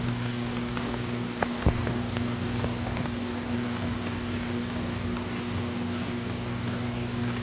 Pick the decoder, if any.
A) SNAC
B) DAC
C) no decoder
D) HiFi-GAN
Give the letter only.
B